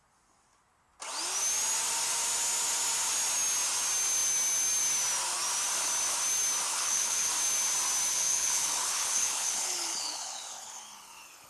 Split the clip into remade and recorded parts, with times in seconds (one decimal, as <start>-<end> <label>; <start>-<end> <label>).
0.0-6.7 recorded; 6.7-7.3 remade; 7.3-8.1 recorded; 8.1-11.5 remade